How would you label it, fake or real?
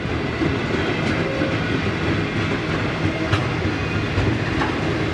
real